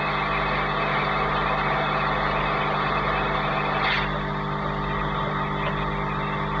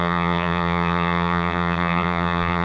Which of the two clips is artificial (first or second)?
second